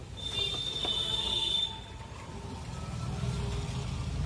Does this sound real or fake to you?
real